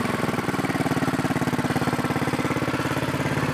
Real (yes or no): yes